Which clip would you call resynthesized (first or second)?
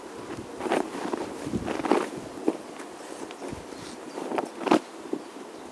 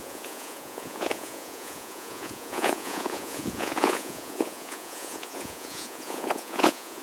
second